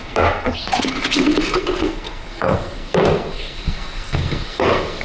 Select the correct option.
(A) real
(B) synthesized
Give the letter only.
B